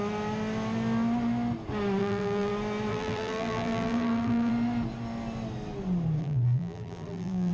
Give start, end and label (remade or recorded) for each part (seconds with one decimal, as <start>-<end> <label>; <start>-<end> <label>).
0.0-2.0 recorded; 2.0-2.5 remade; 2.5-2.9 recorded; 2.9-4.5 remade; 4.5-6.2 recorded; 6.2-7.5 remade